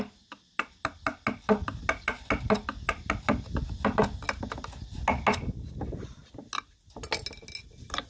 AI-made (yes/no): no